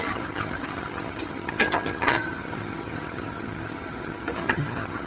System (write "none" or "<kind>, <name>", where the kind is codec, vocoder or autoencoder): vocoder, HiFi-GAN